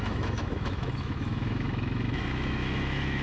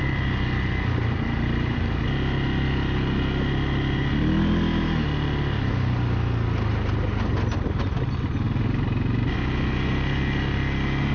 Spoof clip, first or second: first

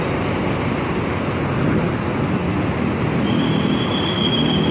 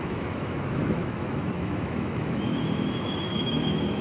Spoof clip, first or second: second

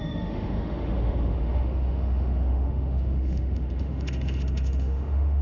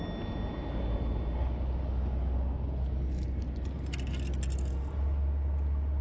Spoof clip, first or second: first